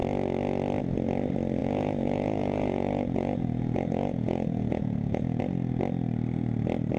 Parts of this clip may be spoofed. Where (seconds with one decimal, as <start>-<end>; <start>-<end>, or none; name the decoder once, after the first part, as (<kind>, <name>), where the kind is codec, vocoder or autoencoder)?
1.6-5.4 (vocoder, Vocos)